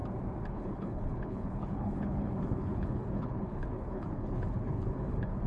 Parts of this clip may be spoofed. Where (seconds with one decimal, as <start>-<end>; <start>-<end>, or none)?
0.5-5.5